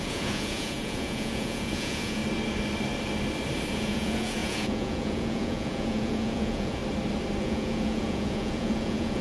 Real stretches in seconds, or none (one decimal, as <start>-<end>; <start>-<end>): 2.2-3.7; 6.8-7.4